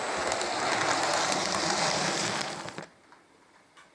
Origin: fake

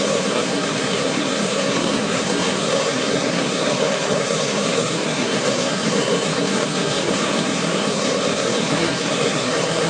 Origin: fake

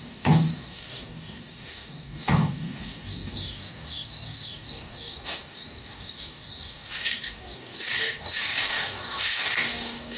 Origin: fake